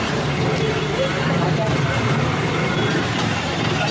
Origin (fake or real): fake